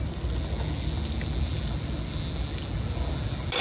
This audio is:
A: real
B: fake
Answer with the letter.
A